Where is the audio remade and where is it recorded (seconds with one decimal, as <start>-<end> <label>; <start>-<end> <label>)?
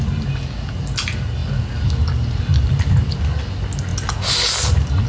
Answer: 0.0-5.1 recorded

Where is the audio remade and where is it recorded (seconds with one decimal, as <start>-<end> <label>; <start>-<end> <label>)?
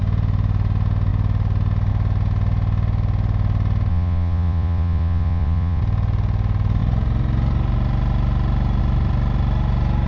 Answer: 0.0-3.9 recorded; 3.9-5.8 remade; 5.8-10.1 recorded